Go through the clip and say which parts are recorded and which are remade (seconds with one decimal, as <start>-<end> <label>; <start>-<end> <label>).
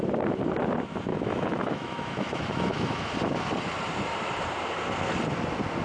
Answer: 0.0-1.1 recorded; 1.1-3.1 remade; 3.1-5.8 recorded